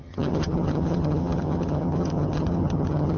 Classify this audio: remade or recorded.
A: remade